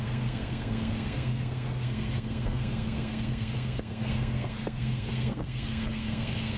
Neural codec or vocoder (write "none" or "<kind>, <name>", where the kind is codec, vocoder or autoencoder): codec, SNAC